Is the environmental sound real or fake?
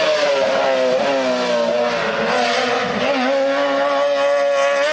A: real